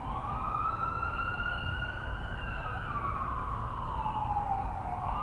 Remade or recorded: remade